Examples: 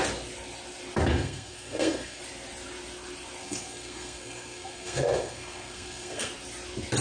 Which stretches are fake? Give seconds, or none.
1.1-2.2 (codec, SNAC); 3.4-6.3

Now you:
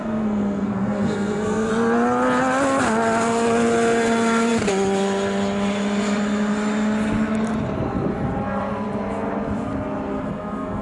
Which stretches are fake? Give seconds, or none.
0.0-1.7 (codec, SNAC); 10.1-10.8

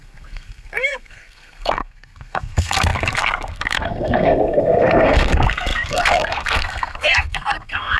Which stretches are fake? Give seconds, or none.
0.0-8.0 (codec, SNAC)